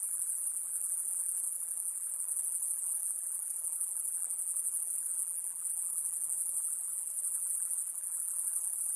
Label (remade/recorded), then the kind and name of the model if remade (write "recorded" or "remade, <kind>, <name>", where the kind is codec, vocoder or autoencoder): remade, vocoder, BigVGAN v2